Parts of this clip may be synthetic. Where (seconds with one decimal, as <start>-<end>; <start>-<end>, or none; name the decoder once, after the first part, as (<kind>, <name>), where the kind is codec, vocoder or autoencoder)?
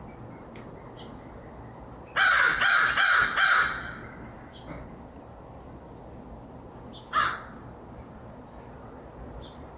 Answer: none